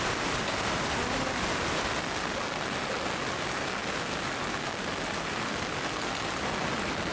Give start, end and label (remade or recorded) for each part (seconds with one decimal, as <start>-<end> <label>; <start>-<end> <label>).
0.0-7.1 recorded